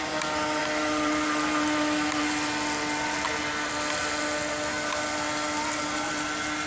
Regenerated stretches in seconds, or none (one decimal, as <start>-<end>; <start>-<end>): none